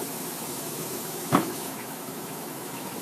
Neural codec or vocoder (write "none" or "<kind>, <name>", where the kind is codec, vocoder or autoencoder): autoencoder, DAC-VAE